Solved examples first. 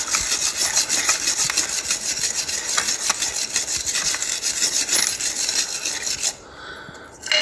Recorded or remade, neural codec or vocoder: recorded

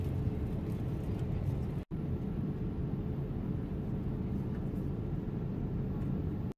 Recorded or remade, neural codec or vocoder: recorded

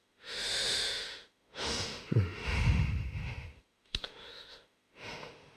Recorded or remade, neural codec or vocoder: remade, autoencoder, DAC-VAE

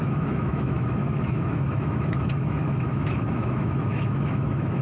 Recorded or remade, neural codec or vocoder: remade, autoencoder, DAC-VAE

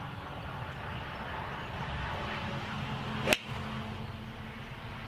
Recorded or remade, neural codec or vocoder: recorded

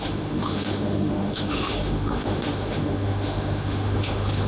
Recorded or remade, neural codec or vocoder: remade, autoencoder, DAC-VAE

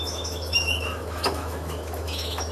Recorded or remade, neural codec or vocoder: remade, autoencoder, DAC-VAE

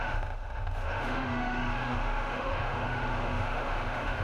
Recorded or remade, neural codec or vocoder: remade, autoencoder, DAC-VAE